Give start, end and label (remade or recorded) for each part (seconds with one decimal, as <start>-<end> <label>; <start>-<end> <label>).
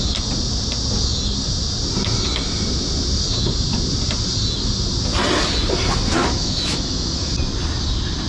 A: 0.0-6.2 recorded; 6.2-7.3 remade; 7.3-8.3 recorded